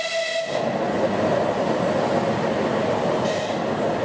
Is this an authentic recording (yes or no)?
yes